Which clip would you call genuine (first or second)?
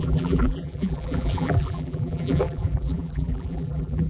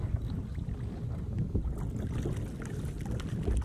second